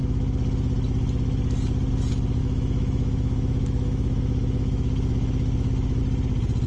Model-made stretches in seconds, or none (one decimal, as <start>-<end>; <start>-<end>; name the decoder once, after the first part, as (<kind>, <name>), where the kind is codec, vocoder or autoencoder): 2.4-6.0 (autoencoder, DAC-VAE)